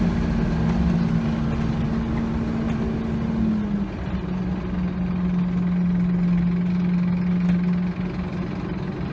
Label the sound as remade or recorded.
recorded